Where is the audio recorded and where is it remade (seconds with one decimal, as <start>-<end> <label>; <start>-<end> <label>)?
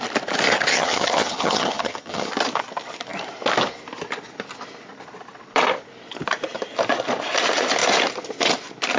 0.0-0.7 recorded; 0.7-2.3 remade; 2.3-9.0 recorded